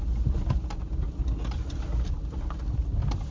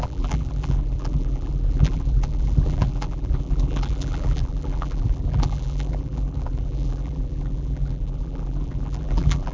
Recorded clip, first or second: first